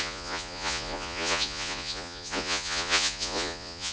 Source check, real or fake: fake